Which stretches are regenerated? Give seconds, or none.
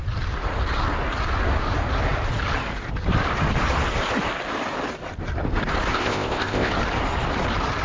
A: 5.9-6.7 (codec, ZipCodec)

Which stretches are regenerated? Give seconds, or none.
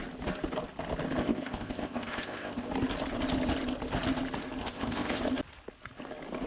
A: 1.2-2.7 (codec, ZipCodec); 4.6-5.2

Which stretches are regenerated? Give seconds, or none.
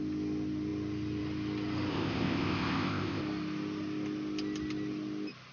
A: 1.9-3.2 (codec, ZipCodec)